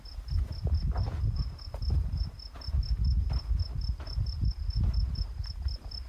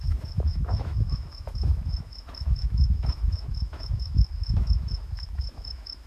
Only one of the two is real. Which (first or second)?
first